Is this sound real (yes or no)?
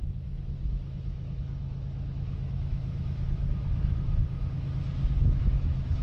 no